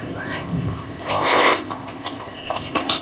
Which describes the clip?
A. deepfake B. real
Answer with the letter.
A